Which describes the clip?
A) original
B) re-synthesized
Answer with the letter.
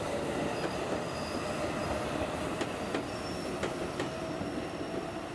A